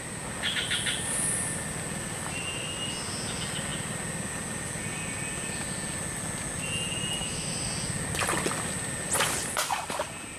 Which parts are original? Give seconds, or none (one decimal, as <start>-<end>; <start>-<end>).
0.0-7.2; 7.7-10.4